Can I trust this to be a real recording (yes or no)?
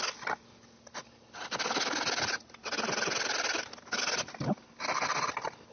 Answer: yes